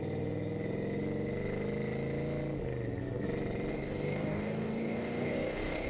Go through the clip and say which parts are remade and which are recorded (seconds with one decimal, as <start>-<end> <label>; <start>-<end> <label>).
0.0-3.7 recorded; 3.7-5.9 remade

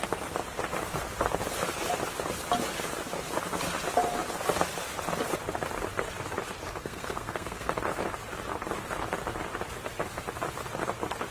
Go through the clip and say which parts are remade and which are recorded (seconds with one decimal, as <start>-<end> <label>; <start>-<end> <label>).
0.0-6.8 recorded; 6.8-7.7 remade; 7.7-11.3 recorded

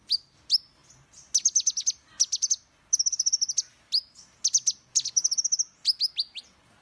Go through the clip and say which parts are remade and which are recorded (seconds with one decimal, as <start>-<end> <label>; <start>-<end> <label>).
0.0-6.8 recorded

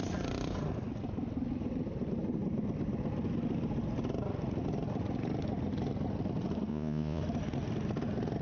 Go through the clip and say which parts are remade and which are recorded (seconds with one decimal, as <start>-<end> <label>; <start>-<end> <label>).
0.0-6.7 recorded; 6.7-7.2 remade; 7.2-8.4 recorded